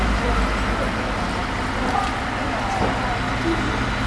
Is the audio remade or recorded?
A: recorded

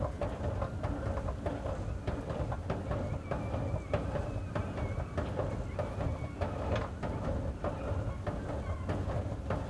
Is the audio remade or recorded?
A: recorded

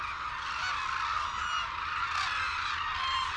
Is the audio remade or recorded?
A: recorded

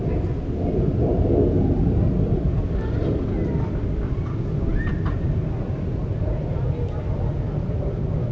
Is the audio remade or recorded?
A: recorded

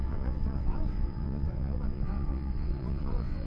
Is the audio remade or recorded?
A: remade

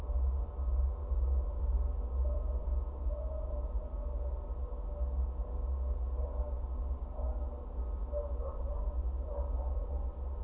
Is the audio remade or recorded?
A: recorded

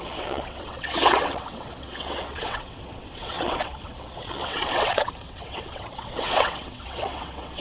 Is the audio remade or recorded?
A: remade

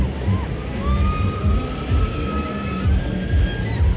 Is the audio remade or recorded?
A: recorded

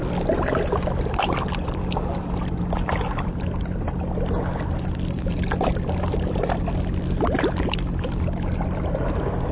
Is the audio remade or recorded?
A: recorded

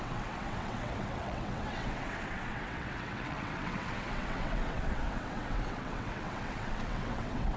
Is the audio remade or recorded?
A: remade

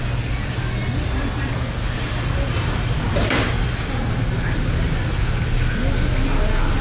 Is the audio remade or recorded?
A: recorded